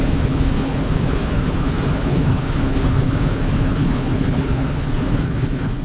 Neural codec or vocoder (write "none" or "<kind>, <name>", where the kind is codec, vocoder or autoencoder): codec, HILCodec